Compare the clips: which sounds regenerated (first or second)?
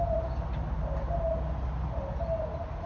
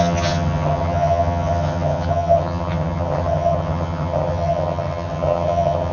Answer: second